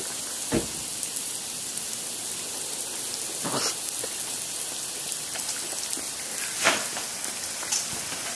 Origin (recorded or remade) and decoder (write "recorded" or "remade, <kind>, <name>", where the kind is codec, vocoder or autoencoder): recorded